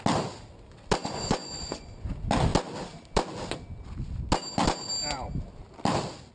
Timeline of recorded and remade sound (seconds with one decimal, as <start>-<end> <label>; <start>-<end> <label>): 0.0-1.0 recorded; 1.0-2.1 remade; 2.1-6.3 recorded